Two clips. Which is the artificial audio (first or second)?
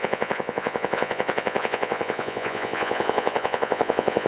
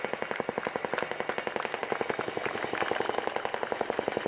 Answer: first